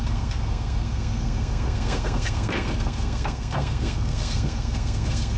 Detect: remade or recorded remade